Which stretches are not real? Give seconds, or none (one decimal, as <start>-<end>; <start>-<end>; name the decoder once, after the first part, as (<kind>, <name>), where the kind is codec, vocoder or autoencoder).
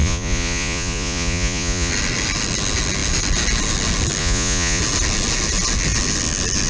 0.0-1.9 (vocoder, Vocos); 4.2-4.8